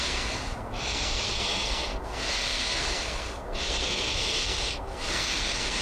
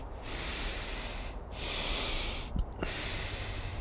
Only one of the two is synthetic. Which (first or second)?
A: first